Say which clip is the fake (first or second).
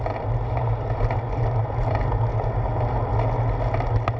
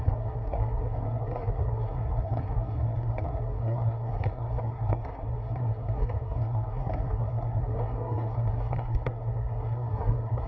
second